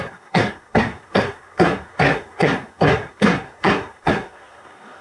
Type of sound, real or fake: fake